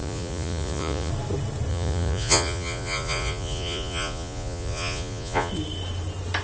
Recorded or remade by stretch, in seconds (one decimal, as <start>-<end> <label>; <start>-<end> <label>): 0.0-1.1 remade; 1.1-1.7 recorded; 1.7-5.5 remade; 5.5-6.4 recorded

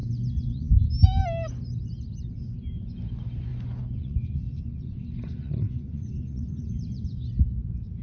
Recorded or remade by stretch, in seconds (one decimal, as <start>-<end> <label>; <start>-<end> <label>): 0.0-0.7 remade; 0.7-3.5 recorded; 3.5-7.3 remade; 7.3-8.0 recorded